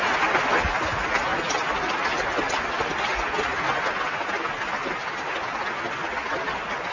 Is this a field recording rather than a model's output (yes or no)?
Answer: yes